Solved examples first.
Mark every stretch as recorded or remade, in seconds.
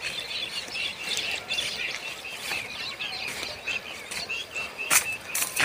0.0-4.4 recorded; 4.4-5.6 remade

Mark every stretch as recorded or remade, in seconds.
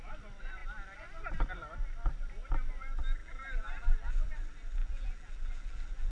0.0-3.2 recorded; 3.2-4.3 remade; 4.3-4.8 recorded; 4.8-6.1 remade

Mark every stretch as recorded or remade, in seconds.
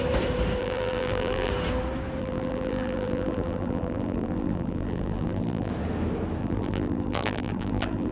0.0-0.6 recorded; 0.6-1.5 remade; 1.5-2.2 recorded; 2.2-5.7 remade; 5.7-6.4 recorded; 6.4-8.1 remade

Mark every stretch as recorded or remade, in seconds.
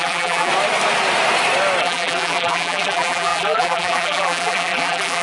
0.0-0.5 remade; 0.5-1.8 recorded; 1.8-5.2 remade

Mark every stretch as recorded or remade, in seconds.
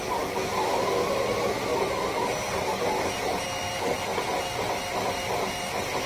0.0-0.5 recorded; 0.5-1.1 remade; 1.1-6.1 recorded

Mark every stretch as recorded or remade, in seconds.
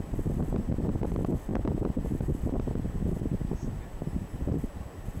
0.0-5.2 recorded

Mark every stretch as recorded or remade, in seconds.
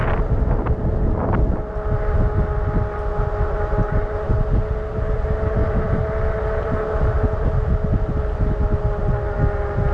0.0-5.6 recorded; 5.6-7.0 remade; 7.0-9.9 recorded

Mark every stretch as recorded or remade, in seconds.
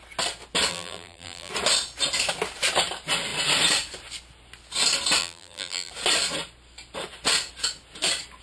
0.0-0.7 recorded; 0.7-1.5 remade; 1.5-5.2 recorded; 5.2-5.9 remade; 5.9-8.4 recorded